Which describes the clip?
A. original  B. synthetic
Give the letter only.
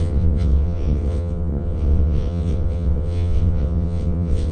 B